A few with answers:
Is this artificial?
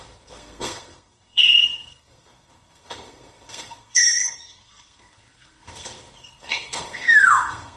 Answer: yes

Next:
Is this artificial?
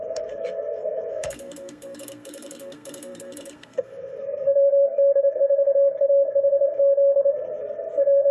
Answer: yes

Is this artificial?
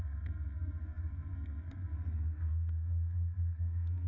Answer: yes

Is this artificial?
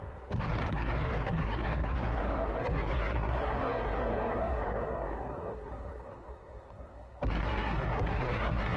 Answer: yes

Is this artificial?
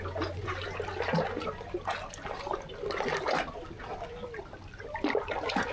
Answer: no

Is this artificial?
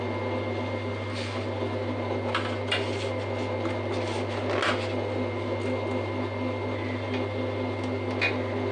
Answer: no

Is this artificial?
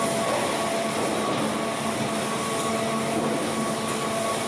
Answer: no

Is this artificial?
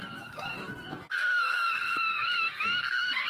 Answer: yes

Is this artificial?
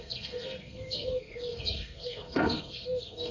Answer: yes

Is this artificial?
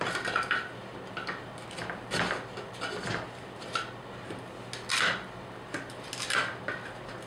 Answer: no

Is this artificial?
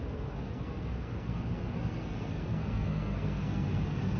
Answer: yes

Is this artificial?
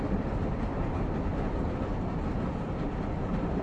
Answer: no